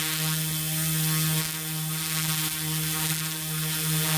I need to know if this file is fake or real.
real